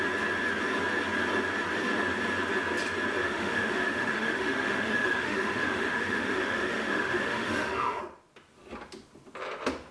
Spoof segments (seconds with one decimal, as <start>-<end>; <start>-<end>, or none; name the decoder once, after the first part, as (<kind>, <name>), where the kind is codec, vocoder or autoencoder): 3.2-8.0 (autoencoder, DAC-VAE)